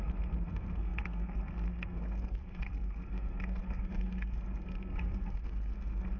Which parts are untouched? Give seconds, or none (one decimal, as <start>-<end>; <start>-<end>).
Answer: none